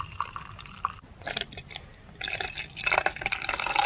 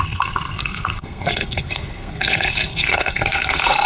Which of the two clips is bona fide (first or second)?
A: first